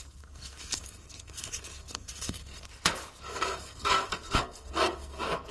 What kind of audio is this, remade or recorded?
remade